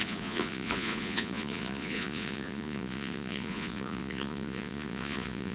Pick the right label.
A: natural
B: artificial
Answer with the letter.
B